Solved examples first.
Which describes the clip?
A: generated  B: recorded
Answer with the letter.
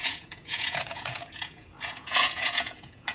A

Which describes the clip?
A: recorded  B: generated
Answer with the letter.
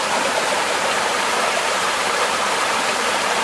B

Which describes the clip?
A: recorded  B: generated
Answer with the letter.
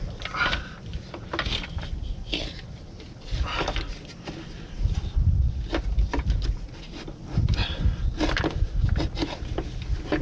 A